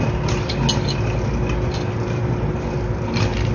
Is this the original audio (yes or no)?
yes